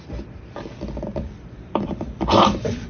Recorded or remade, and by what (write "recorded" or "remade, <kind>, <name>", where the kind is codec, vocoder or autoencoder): remade, vocoder, BigVGAN v2